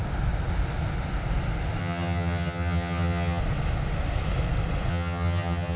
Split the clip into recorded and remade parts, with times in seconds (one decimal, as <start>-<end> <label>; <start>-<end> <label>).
0.0-1.8 recorded; 1.8-3.4 remade; 3.4-4.9 recorded; 4.9-5.8 remade